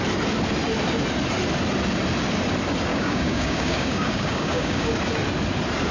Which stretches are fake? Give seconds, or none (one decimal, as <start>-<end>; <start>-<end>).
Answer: 2.9-4.9